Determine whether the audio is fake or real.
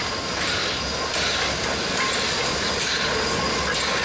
real